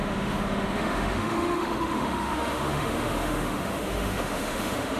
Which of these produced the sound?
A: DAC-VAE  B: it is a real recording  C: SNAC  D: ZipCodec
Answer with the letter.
A